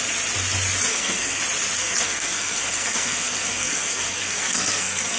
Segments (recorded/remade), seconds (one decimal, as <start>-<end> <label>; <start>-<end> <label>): 0.0-0.9 recorded; 0.9-1.4 remade; 1.4-1.8 recorded; 1.8-5.2 remade